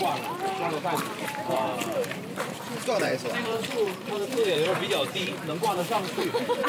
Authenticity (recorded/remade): remade